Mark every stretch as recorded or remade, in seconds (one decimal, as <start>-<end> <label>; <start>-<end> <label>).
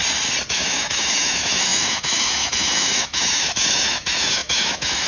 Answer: 0.0-0.5 recorded; 0.5-5.1 remade